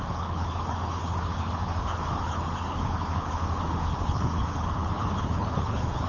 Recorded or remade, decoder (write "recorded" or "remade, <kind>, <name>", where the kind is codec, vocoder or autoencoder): remade, codec, HILCodec